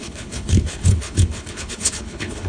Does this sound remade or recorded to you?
remade